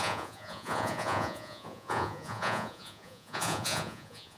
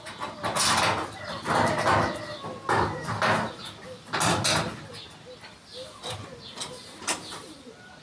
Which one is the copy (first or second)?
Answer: first